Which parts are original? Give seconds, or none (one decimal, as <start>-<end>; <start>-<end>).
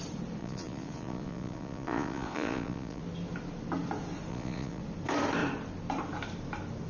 0.0-0.4; 3.0-4.3; 4.8-6.9